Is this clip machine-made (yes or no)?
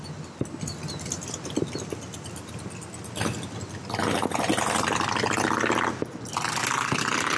no